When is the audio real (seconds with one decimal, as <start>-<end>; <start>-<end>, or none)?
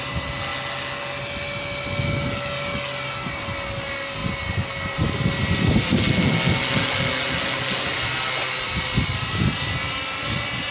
0.0-10.7